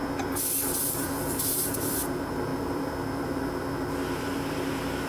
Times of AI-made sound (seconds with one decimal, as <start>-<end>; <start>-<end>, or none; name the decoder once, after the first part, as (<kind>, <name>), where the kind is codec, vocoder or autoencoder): 0.8-5.1 (vocoder, BigVGAN v2)